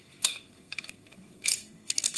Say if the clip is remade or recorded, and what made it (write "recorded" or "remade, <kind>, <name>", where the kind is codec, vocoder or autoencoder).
remade, codec, SNAC